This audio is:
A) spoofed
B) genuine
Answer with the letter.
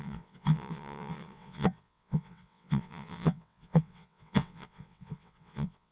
A